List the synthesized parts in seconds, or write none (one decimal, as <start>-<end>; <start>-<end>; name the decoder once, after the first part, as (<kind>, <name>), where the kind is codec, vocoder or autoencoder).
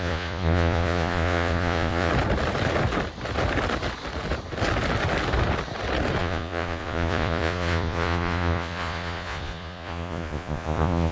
0.0-2.1 (vocoder, Vocos); 6.2-11.1